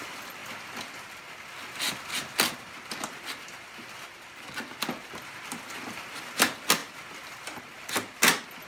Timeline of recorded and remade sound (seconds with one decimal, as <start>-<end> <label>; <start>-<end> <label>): 0.0-8.7 recorded